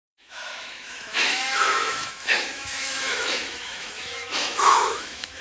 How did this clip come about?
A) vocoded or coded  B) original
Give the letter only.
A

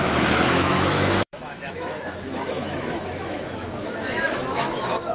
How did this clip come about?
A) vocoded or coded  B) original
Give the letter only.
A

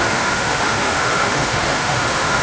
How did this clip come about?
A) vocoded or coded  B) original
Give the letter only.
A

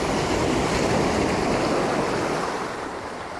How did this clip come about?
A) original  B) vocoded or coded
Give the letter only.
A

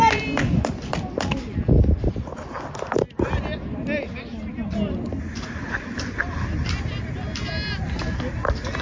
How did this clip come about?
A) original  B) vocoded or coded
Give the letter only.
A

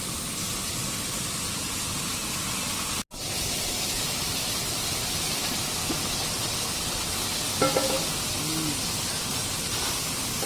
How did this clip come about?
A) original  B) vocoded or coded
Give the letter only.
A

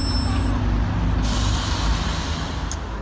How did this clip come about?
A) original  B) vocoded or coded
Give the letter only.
A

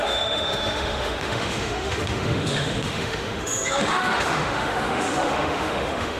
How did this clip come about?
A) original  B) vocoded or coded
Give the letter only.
B